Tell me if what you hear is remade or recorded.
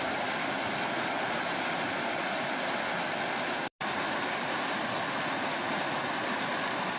recorded